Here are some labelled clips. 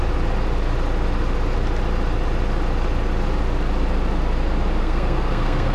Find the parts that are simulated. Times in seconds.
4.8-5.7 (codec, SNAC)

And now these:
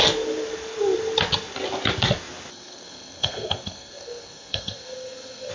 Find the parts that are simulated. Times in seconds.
2.5-5.5 (codec, SNAC)

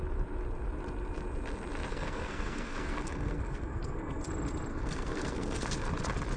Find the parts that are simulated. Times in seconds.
1.9-4.2 (codec, SNAC); 4.7-5.9

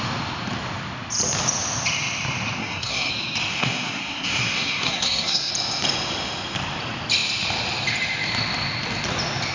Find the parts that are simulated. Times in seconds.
2.6-3.1 (codec, SNAC); 3.5-5.5

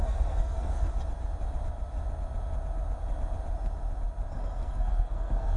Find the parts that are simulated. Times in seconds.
0.0-0.9 (codec, SNAC); 4.3-5.6

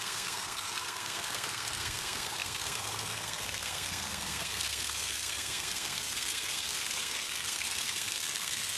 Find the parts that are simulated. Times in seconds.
0.0-8.8 (codec, SNAC)

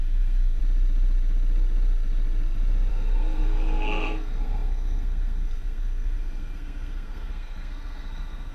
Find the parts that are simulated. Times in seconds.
0.0-0.6 (codec, SNAC); 2.9-8.5